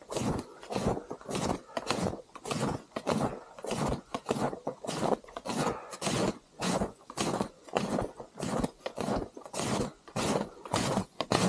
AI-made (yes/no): yes